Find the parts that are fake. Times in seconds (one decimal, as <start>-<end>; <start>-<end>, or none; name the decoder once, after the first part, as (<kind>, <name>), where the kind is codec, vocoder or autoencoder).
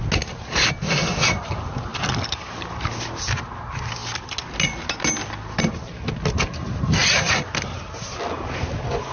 none